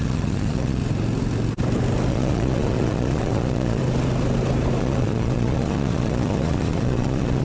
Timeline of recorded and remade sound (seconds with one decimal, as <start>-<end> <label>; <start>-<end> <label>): 0.0-0.8 remade; 0.8-2.1 recorded; 2.1-3.8 remade; 3.8-4.8 recorded; 4.8-7.4 remade